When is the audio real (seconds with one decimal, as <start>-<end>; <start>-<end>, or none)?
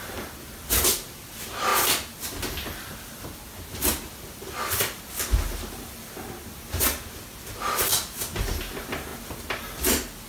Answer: 0.0-10.3